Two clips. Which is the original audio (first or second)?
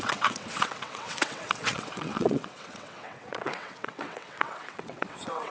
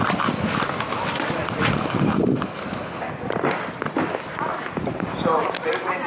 second